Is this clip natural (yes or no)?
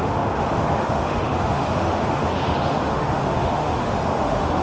no